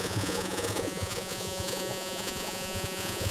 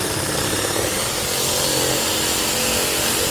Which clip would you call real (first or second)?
second